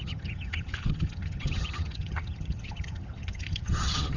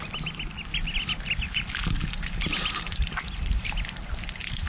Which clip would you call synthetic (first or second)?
first